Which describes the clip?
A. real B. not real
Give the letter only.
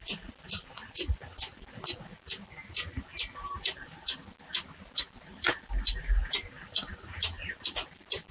A